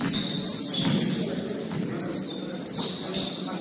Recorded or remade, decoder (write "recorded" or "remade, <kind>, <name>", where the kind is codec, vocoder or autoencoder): recorded